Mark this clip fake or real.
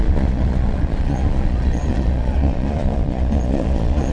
fake